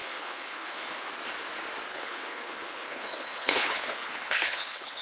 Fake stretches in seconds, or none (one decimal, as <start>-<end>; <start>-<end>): 0.0-1.1; 1.9-5.0

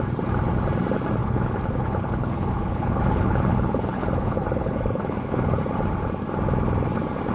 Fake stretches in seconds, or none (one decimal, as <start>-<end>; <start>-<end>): 1.2-5.6